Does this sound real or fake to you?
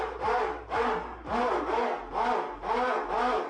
real